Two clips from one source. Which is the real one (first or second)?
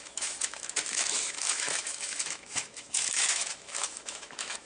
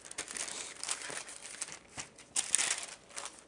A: second